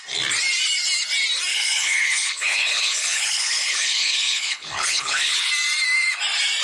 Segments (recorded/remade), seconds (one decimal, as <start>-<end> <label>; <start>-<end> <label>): 0.0-1.5 recorded; 1.5-5.5 remade; 5.5-6.6 recorded